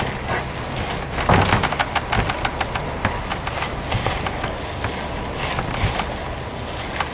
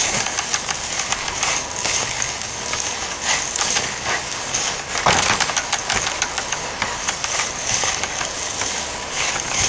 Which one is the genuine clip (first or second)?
first